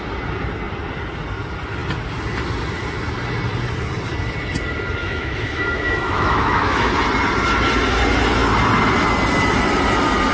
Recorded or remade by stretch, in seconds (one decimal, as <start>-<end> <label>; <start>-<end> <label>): 0.0-5.0 recorded; 5.0-6.9 remade; 6.9-10.3 recorded